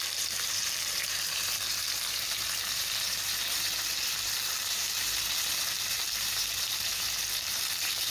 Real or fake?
fake